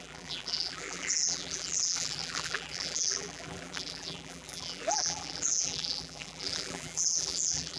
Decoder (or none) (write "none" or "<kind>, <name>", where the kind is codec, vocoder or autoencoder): vocoder, BigVGAN v2